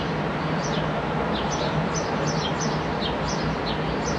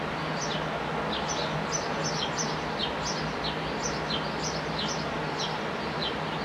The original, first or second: second